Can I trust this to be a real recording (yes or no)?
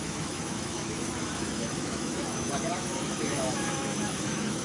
no